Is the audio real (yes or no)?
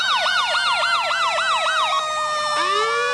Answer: yes